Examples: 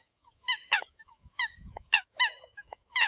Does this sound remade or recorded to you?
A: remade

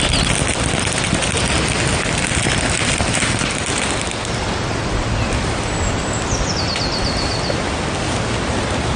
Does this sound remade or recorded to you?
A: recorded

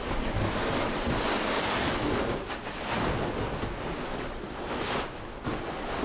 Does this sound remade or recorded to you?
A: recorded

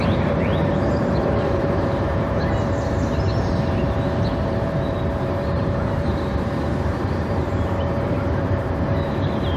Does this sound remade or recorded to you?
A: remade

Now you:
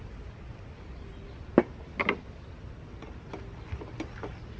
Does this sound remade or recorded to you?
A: recorded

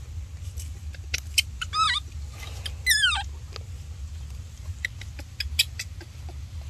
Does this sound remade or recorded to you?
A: recorded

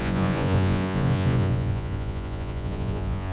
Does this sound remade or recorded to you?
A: remade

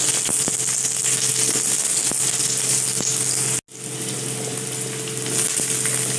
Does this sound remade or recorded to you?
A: recorded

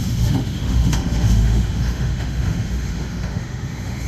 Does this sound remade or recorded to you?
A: remade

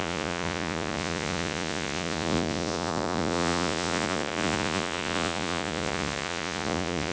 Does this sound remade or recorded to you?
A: remade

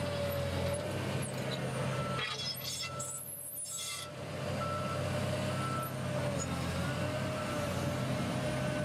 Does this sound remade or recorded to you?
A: recorded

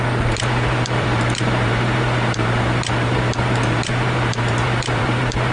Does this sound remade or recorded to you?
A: remade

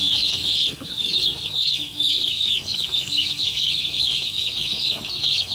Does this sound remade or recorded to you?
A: remade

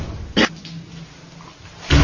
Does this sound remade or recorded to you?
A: recorded